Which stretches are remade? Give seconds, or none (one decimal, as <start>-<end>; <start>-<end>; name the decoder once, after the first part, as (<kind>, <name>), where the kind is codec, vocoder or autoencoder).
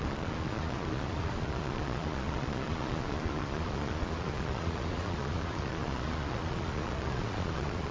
0.0-7.9 (vocoder, Vocos)